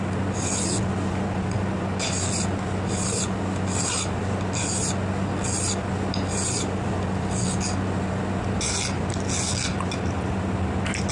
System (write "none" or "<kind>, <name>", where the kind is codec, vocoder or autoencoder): none